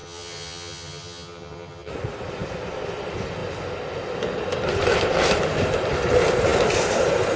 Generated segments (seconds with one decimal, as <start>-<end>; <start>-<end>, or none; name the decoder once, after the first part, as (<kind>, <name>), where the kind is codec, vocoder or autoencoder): 0.0-1.9 (vocoder, HiFi-GAN)